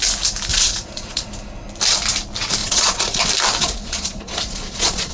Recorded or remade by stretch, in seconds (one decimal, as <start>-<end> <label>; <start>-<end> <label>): 0.0-0.5 recorded; 0.5-1.3 remade; 1.3-2.6 recorded; 2.6-3.2 remade; 3.2-3.6 recorded; 3.6-5.1 remade